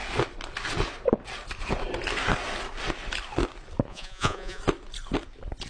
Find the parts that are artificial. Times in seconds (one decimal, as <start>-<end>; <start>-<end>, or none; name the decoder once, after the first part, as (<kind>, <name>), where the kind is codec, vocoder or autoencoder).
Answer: 3.9-4.6 (vocoder, Vocos)